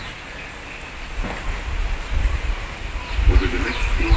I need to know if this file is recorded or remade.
recorded